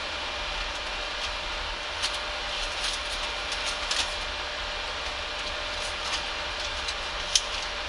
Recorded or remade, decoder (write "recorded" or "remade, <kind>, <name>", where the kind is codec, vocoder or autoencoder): recorded